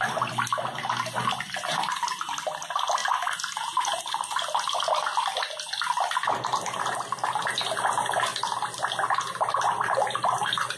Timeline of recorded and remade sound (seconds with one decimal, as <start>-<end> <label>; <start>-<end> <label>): 0.0-10.8 recorded